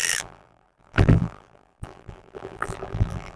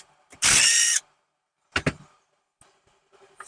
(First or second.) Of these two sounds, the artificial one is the first